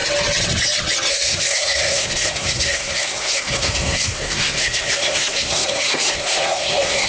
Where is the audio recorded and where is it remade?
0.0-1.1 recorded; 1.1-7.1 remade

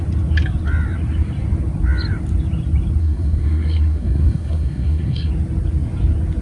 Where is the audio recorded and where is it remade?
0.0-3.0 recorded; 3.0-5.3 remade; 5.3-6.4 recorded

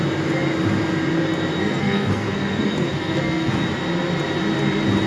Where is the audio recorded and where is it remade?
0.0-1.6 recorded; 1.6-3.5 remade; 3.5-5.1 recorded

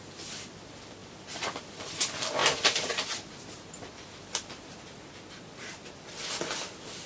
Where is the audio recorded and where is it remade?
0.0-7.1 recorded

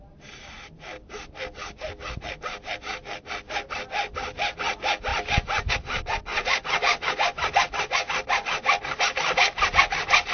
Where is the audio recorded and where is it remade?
0.0-6.3 recorded; 6.3-10.3 remade

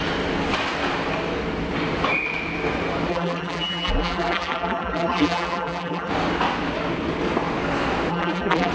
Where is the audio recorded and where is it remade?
0.0-3.1 recorded; 3.1-6.1 remade; 6.1-8.1 recorded; 8.1-8.7 remade

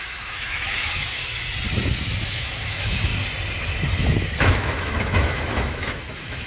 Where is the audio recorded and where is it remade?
0.0-1.2 remade; 1.2-2.3 recorded; 2.3-3.1 remade; 3.1-4.0 recorded; 4.0-6.5 remade

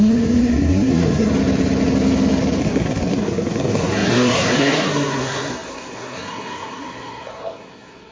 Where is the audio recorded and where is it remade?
0.0-1.3 remade; 1.3-2.6 recorded; 2.6-8.1 remade